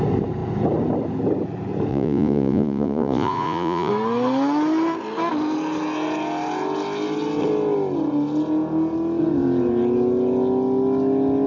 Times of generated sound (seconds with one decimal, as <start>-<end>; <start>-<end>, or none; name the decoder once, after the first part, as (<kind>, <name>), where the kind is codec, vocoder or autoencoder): 1.9-3.9 (vocoder, Vocos)